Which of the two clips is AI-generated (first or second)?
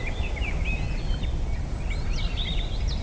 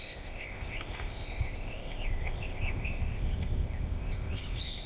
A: second